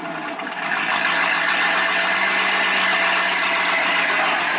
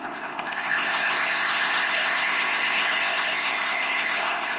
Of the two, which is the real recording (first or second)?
first